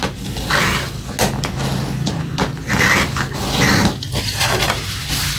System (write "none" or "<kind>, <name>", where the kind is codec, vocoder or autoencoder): none